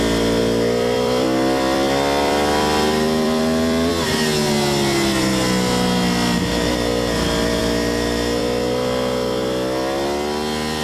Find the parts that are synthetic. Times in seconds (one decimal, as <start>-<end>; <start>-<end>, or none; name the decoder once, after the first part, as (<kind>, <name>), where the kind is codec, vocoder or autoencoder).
0.4-3.9 (vocoder, BigVGAN v2)